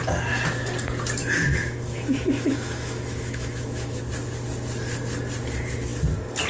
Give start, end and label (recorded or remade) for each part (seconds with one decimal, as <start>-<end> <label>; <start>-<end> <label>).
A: 0.0-1.2 recorded; 1.2-4.0 remade; 4.0-6.5 recorded